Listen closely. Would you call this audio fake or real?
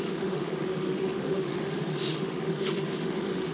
fake